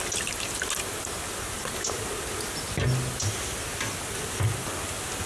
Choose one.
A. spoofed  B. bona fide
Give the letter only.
B